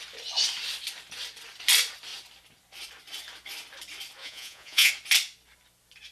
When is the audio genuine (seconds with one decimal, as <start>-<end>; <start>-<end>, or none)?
0.0-4.2; 4.9-6.1